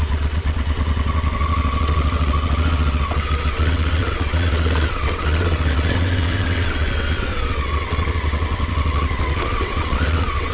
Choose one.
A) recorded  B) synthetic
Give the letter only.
B